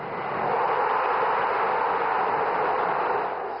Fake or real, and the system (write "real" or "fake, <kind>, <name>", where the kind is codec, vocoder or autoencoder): real